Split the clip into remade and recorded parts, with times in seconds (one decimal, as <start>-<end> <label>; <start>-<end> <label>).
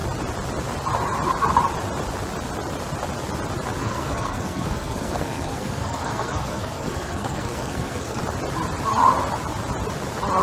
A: 0.0-3.8 recorded; 3.8-8.2 remade; 8.2-10.4 recorded